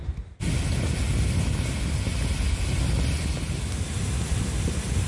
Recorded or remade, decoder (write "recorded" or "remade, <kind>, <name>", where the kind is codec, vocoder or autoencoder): recorded